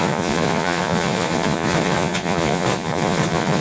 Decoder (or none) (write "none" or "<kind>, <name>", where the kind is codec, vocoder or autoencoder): vocoder, Vocos